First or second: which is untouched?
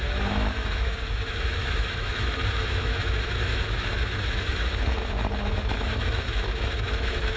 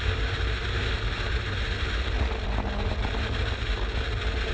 second